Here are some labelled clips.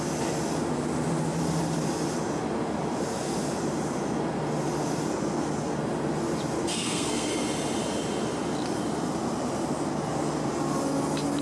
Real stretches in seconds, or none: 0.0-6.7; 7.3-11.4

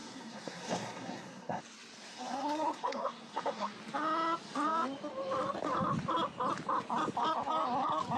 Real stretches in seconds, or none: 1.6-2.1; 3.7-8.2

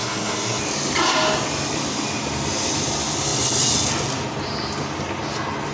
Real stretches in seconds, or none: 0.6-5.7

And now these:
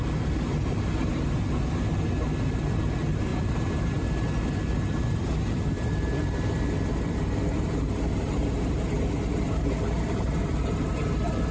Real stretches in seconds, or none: 0.0-11.5

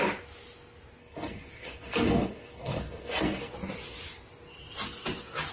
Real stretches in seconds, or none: 0.0-1.0; 3.5-5.5

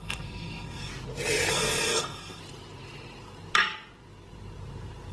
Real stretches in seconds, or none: 0.9-1.5; 2.4-5.1

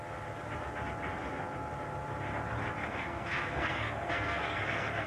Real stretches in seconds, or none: 0.0-2.8

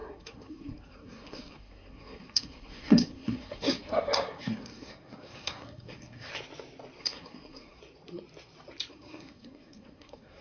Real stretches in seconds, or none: 6.3-7.0; 7.8-8.9